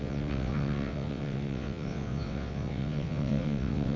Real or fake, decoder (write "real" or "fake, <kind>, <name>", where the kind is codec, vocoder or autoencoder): fake, vocoder, WaveNeXt